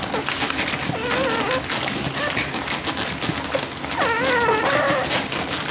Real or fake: real